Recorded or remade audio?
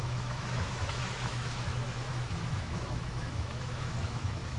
remade